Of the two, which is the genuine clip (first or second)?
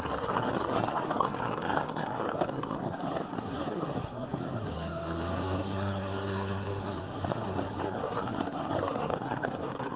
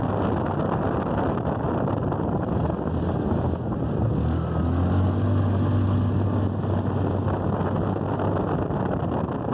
second